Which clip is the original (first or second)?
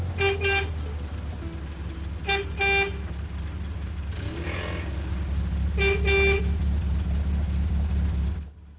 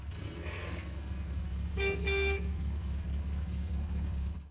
first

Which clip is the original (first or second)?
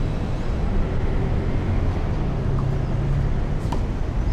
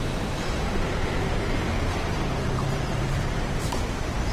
first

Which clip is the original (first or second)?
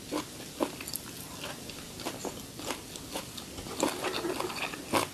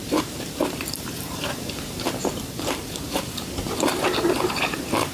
first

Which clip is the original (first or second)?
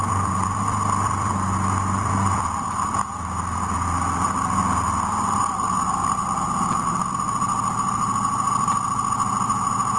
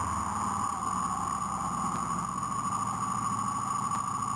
second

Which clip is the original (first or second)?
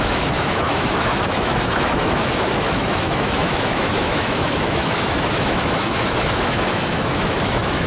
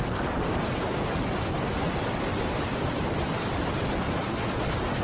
second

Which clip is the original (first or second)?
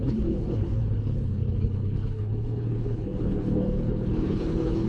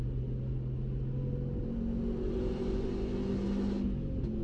second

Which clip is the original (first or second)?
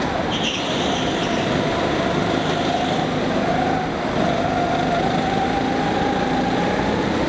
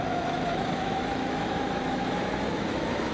first